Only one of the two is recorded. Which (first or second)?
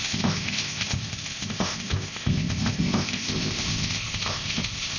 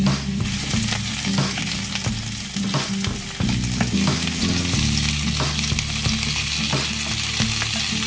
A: second